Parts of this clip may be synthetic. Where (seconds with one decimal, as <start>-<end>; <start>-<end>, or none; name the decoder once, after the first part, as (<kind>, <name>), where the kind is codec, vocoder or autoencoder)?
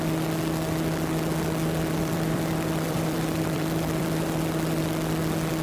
2.0-4.8 (vocoder, BigVGAN v2)